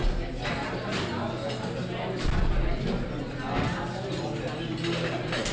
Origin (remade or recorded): recorded